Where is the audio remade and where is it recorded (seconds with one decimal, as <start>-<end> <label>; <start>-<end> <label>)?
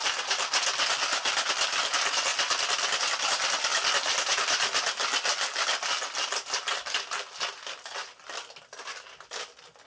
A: 0.0-9.9 recorded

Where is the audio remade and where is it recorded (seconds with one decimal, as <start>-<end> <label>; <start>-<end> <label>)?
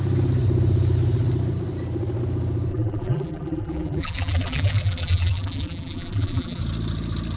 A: 0.0-2.7 recorded; 2.7-6.6 remade; 6.6-7.4 recorded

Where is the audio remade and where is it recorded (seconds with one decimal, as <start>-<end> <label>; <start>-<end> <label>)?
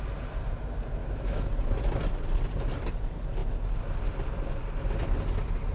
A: 0.0-1.0 recorded; 1.0-1.5 remade; 1.5-5.7 recorded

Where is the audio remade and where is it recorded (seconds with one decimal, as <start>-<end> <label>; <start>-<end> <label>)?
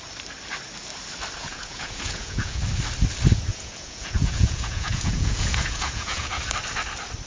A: 0.0-1.4 recorded; 1.4-2.6 remade; 2.6-3.5 recorded; 3.5-6.4 remade; 6.4-7.3 recorded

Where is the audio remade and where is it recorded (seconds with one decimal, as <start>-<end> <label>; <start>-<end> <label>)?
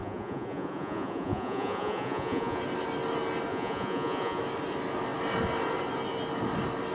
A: 0.0-2.6 remade; 2.6-3.5 recorded; 3.5-4.4 remade; 4.4-6.9 recorded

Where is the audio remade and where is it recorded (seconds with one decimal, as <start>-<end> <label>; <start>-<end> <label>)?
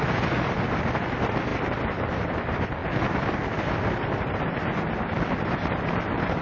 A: 0.0-6.4 recorded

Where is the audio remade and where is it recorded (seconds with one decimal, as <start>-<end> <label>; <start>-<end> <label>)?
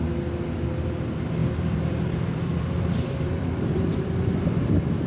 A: 0.0-1.4 recorded; 1.4-4.5 remade; 4.5-5.1 recorded